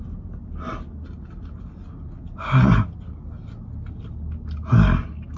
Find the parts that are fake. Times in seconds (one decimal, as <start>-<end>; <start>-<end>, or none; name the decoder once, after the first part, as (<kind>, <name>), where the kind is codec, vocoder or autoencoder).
none